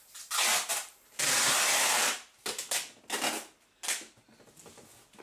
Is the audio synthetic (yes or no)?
no